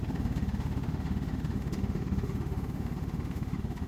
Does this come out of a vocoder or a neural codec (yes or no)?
yes